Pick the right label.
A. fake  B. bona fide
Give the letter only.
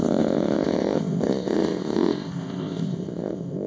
A